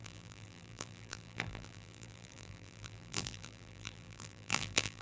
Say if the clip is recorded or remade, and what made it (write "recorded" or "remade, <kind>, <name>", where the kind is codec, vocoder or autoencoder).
remade, vocoder, BigVGAN v2